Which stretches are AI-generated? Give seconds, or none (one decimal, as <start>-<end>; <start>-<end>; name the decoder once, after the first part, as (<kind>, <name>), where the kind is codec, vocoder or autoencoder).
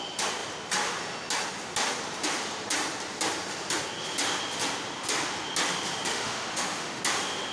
6.1-7.0 (autoencoder, DAC-VAE)